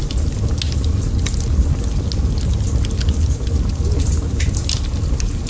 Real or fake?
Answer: real